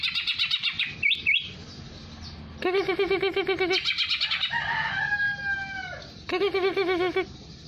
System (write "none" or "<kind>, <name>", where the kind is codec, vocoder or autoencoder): none